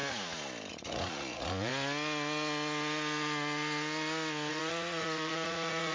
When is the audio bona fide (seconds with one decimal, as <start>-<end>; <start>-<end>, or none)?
0.0-0.7; 1.7-4.5